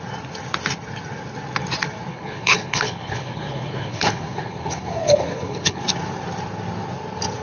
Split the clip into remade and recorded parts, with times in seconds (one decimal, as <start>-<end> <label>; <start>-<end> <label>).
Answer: 0.0-2.1 recorded; 2.1-5.8 remade; 5.8-7.4 recorded